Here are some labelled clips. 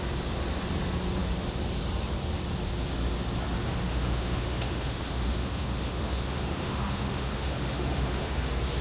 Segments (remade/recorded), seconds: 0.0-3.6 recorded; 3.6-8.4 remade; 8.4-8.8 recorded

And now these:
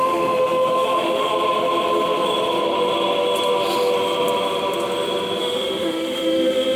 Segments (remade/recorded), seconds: 0.0-1.3 remade; 1.3-5.4 recorded; 5.4-6.8 remade

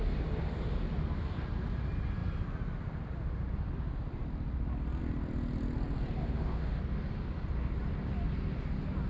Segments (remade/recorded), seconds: 0.0-6.2 recorded; 6.2-6.8 remade; 6.8-9.1 recorded

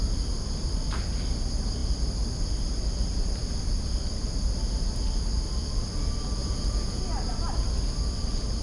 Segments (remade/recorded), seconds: 0.0-6.4 recorded; 6.4-7.0 remade; 7.0-8.6 recorded

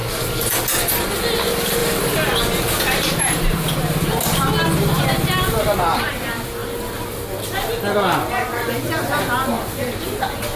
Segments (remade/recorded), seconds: 0.0-10.6 recorded

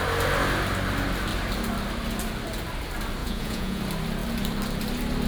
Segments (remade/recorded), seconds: 0.0-3.2 recorded; 3.2-3.8 remade; 3.8-5.3 recorded

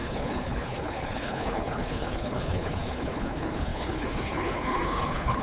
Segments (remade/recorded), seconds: 0.0-5.4 remade